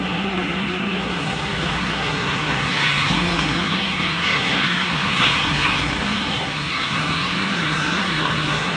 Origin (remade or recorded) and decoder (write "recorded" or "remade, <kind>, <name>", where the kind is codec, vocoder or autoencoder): remade, codec, SNAC